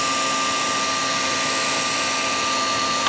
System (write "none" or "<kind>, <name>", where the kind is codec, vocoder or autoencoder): none